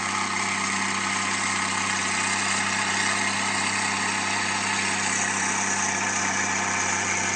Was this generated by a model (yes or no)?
no